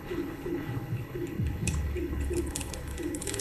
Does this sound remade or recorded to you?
remade